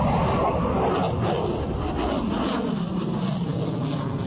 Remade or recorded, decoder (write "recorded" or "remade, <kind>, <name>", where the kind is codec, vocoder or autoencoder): recorded